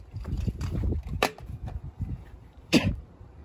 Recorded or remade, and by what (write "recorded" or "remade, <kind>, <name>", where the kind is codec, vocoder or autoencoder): remade, vocoder, BigVGAN v2